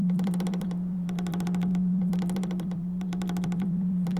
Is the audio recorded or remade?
remade